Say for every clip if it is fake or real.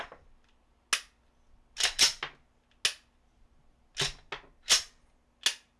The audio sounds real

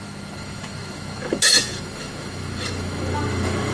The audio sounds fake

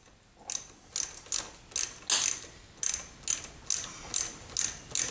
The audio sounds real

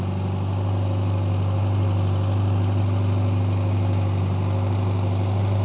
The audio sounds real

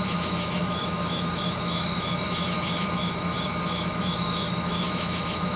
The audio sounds fake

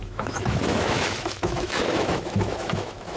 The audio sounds fake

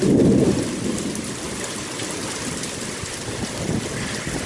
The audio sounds real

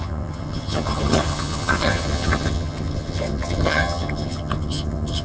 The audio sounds fake